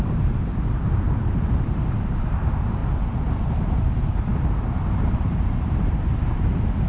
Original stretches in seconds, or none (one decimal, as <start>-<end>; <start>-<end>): 2.8-3.4